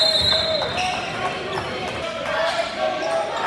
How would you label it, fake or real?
real